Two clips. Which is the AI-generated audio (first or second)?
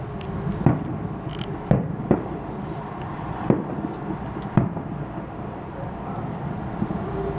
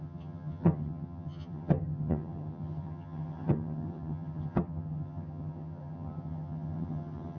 second